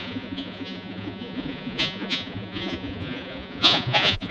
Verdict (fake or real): fake